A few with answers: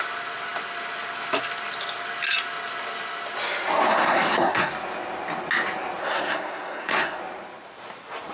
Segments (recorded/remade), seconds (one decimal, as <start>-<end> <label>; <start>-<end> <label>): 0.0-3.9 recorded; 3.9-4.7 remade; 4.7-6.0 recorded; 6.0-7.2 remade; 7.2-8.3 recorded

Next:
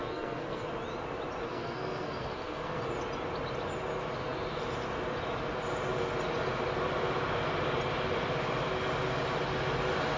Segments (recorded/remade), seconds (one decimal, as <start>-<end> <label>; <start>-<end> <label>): 0.0-0.7 remade; 0.7-1.5 recorded; 1.5-2.8 remade; 2.8-10.2 recorded

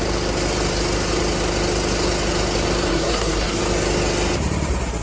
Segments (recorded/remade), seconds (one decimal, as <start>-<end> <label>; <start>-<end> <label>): 0.0-2.9 recorded; 2.9-3.6 remade; 3.6-5.0 recorded

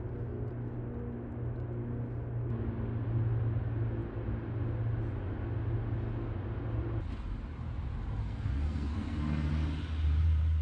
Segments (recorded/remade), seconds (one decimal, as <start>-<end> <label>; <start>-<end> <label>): 0.0-8.2 recorded; 8.2-9.5 remade; 9.5-10.6 recorded

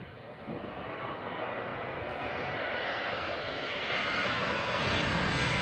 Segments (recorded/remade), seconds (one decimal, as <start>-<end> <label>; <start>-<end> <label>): 0.0-5.6 remade

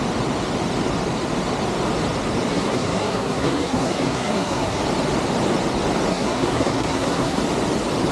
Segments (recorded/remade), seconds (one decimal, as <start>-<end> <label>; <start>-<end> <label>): 0.0-2.5 recorded; 2.5-4.8 remade; 4.8-6.1 recorded; 6.1-7.4 remade; 7.4-8.1 recorded

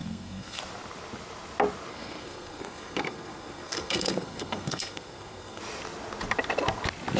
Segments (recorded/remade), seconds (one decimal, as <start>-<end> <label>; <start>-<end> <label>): 0.0-0.6 remade; 0.6-1.9 recorded; 1.9-5.6 remade; 5.6-7.2 recorded

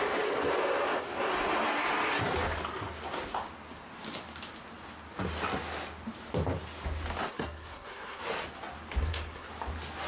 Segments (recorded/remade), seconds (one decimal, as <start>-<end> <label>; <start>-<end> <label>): 0.0-7.3 recorded; 7.3-8.2 remade; 8.2-9.0 recorded; 9.0-9.5 remade; 9.5-10.1 recorded